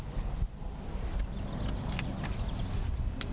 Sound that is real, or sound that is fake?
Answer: real